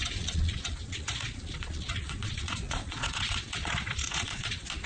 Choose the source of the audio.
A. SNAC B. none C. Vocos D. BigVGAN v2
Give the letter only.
C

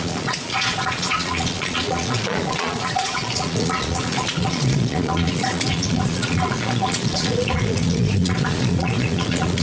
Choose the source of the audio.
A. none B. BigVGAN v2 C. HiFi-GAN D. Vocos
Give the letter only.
D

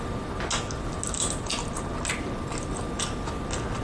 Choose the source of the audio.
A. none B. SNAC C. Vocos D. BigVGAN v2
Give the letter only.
A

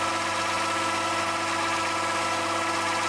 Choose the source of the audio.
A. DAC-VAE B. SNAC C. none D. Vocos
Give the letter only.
C